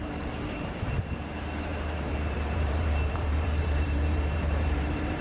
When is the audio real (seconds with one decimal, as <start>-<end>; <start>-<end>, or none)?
none